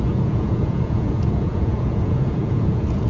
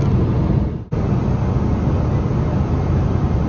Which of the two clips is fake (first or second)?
first